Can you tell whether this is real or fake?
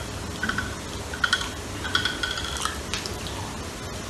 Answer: real